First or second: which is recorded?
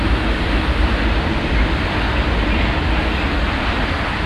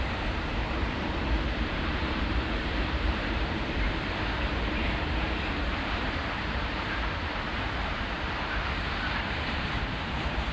first